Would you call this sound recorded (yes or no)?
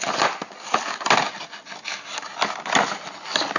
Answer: yes